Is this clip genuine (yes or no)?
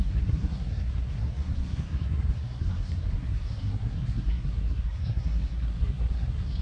no